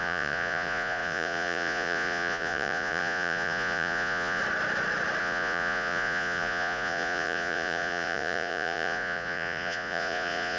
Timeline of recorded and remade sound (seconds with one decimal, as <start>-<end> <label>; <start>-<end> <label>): 0.0-4.4 remade; 4.4-5.2 recorded; 5.2-10.6 remade